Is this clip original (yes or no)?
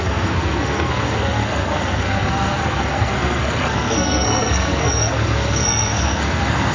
no